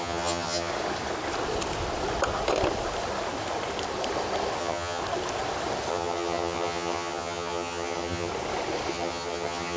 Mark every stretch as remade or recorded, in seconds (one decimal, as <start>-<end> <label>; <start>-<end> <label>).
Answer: 0.0-0.7 remade; 0.7-4.6 recorded; 4.6-5.0 remade; 5.0-5.9 recorded; 5.9-8.3 remade; 8.3-8.9 recorded; 8.9-9.8 remade